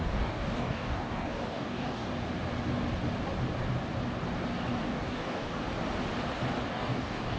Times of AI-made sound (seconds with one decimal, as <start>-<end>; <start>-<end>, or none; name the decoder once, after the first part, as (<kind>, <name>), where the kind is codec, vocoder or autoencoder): 0.0-2.1 (codec, DAC); 4.8-5.6; 6.7-7.4